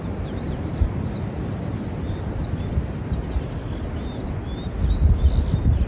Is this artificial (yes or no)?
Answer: no